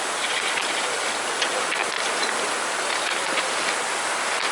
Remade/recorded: recorded